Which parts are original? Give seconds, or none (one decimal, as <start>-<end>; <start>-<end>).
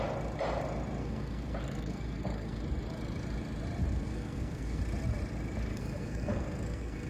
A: 0.0-1.0; 2.6-3.9; 4.8-5.7